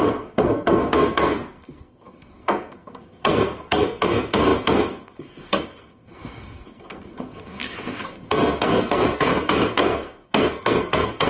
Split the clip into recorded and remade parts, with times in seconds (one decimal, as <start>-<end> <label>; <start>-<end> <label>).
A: 0.0-11.3 remade